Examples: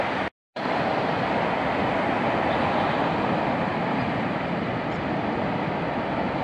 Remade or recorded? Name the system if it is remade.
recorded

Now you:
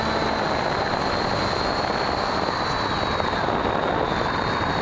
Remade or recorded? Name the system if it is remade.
recorded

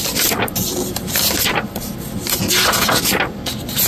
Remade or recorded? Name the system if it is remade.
recorded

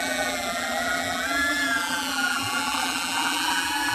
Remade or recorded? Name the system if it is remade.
remade, vocoder, BigVGAN v2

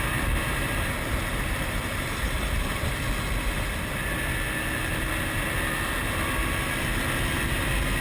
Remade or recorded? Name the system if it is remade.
recorded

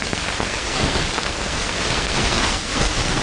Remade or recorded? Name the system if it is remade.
remade, codec, SNAC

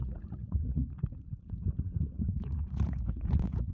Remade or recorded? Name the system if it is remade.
remade, vocoder, Vocos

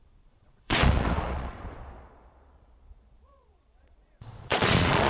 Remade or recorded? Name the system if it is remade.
remade, vocoder, Vocos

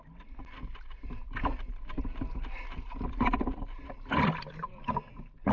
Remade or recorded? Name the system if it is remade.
recorded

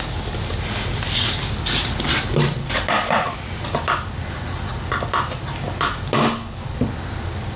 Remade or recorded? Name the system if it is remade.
recorded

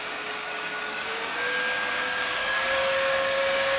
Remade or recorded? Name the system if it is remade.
remade, codec, DAC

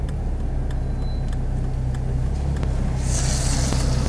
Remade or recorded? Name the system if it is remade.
recorded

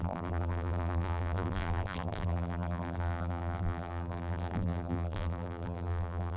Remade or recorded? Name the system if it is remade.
remade, vocoder, BigVGAN v2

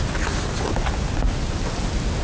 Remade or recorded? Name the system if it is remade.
recorded